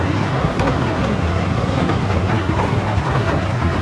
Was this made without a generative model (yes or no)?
no